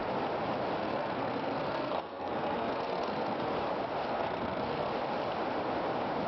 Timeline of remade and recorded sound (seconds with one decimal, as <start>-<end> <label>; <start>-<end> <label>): 0.0-0.8 recorded; 0.8-3.5 remade; 3.5-4.1 recorded; 4.1-4.9 remade; 4.9-6.3 recorded